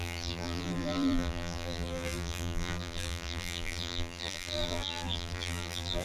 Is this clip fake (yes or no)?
yes